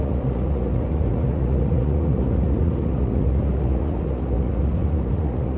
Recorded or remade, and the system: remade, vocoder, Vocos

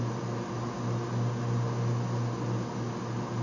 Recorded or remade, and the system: recorded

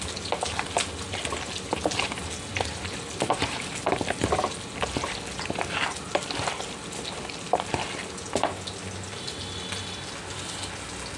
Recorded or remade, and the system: recorded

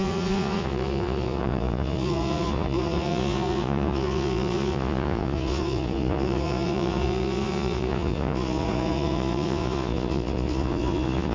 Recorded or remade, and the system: remade, vocoder, Vocos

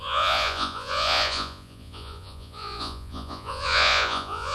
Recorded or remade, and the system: remade, vocoder, Vocos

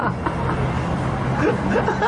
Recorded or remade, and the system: recorded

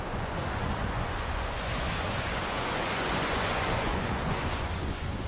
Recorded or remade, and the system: remade, vocoder, Vocos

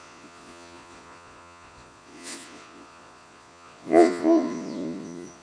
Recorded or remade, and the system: remade, vocoder, Vocos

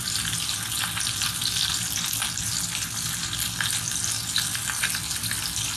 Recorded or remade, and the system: recorded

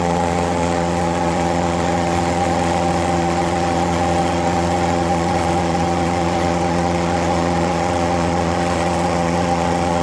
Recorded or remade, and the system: remade, vocoder, Vocos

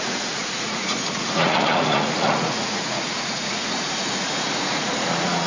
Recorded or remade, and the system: remade, vocoder, Vocos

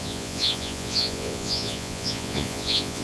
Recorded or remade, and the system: remade, vocoder, Vocos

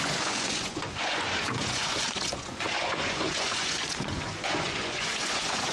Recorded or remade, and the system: remade, vocoder, Vocos